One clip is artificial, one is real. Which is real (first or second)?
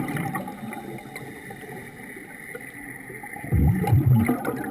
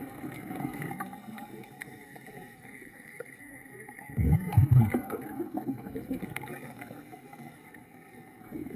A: first